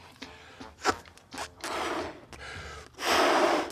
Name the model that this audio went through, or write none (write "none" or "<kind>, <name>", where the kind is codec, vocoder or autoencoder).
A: none